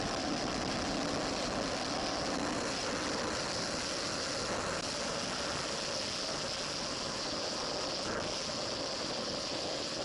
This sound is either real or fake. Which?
real